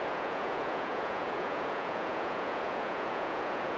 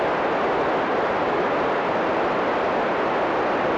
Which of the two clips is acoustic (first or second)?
second